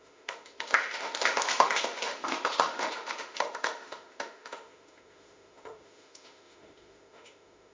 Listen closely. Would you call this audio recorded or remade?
remade